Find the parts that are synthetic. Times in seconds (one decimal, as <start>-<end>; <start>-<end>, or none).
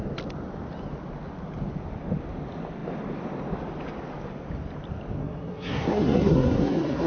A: 5.2-7.1